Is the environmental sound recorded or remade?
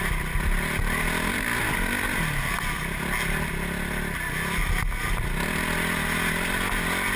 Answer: recorded